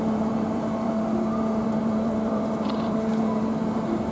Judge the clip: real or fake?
fake